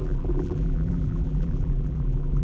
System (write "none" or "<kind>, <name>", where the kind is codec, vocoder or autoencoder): vocoder, BigVGAN v2